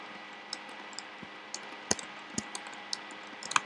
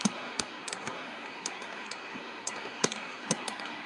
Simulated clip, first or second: second